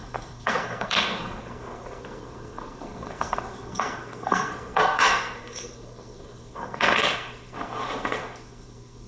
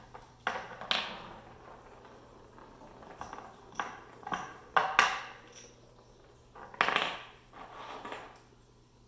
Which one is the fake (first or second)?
first